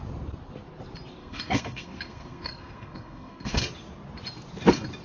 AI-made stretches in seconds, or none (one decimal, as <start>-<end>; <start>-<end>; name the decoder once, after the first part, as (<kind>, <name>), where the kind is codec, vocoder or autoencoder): 1.2-3.6 (codec, SNAC)